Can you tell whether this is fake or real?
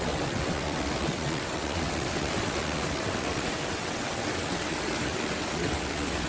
fake